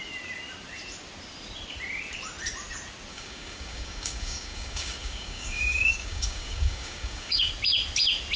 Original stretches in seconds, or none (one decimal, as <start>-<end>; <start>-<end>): 0.0-3.1; 7.5-8.4